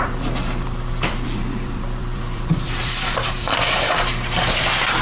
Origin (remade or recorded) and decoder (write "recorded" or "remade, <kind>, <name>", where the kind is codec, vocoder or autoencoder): remade, vocoder, BigVGAN v2